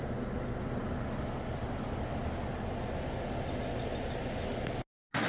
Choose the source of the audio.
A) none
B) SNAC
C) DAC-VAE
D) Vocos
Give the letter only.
A